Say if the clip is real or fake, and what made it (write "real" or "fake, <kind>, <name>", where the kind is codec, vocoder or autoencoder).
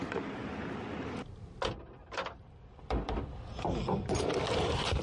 real